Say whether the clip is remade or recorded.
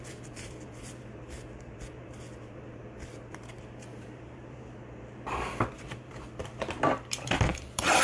remade